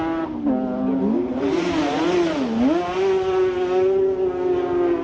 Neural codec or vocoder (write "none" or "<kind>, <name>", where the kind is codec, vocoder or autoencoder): none